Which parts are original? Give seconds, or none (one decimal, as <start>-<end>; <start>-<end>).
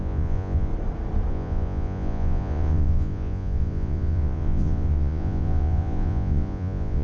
0.7-1.3